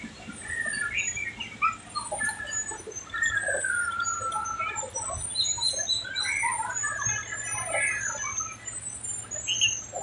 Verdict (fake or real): real